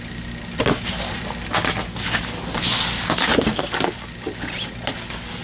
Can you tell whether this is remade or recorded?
recorded